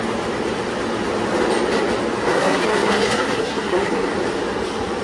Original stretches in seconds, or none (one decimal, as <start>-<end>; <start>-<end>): 0.0-2.3; 4.1-5.0

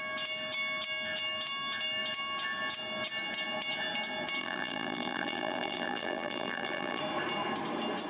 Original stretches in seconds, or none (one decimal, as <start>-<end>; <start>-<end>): 0.0-4.4; 7.0-8.1

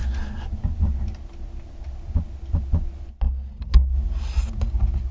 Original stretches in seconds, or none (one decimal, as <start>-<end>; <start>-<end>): 0.0-5.1

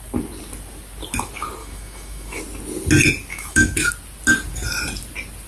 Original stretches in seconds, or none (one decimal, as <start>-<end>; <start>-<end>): 0.0-1.6; 2.4-3.3; 3.9-5.5

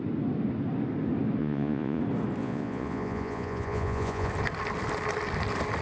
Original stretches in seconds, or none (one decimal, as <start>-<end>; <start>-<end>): 0.0-1.4; 2.0-2.4; 4.3-5.8